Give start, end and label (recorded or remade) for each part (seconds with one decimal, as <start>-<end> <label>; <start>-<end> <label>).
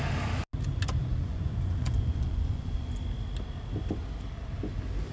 0.0-1.0 recorded; 1.0-3.0 remade; 3.0-5.1 recorded